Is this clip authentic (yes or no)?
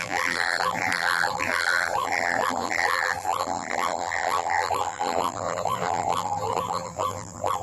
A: no